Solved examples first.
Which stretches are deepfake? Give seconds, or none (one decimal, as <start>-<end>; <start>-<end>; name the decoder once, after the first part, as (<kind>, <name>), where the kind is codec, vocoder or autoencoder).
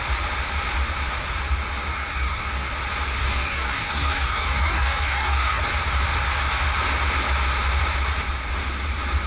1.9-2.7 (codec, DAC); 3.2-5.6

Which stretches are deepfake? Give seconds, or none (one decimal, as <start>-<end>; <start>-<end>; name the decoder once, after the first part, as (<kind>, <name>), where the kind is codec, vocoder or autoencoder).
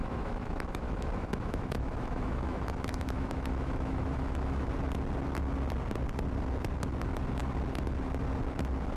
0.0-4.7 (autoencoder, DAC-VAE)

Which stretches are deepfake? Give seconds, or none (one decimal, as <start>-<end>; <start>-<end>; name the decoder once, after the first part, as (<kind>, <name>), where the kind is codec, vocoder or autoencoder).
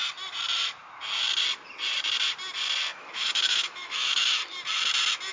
2.9-4.4 (autoencoder, DAC-VAE)